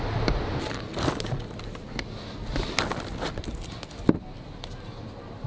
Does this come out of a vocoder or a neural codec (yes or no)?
no